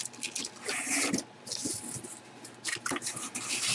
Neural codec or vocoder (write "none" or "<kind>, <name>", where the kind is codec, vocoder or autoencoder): none